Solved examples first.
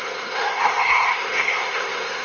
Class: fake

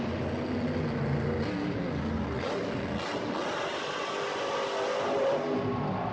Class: real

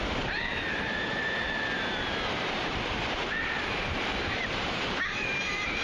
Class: fake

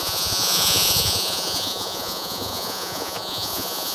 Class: fake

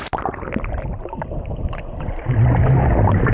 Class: real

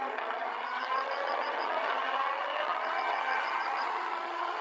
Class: fake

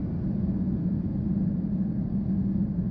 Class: real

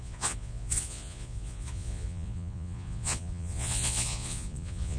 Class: fake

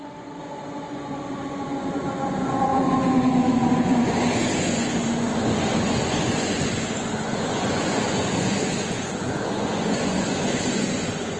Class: fake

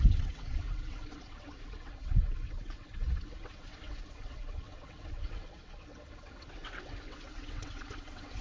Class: fake